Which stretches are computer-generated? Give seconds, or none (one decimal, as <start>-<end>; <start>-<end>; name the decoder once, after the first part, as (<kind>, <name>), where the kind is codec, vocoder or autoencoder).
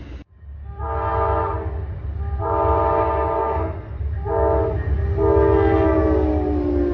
3.4-4.0 (codec, SNAC)